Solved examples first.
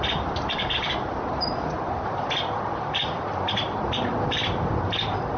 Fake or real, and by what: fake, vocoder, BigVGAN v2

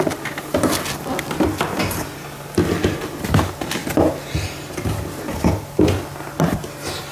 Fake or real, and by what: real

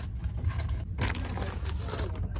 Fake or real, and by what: real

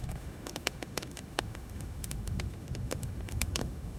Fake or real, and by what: fake, autoencoder, DAC-VAE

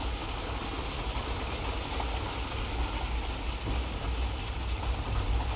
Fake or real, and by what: real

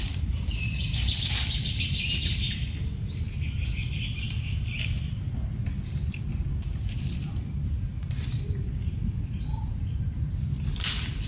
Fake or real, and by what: fake, vocoder, BigVGAN v2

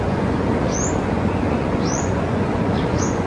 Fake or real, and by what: fake, vocoder, Vocos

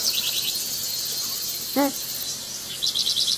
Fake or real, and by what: fake, vocoder, BigVGAN v2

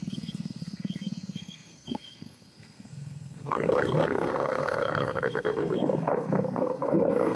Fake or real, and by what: fake, codec, SNAC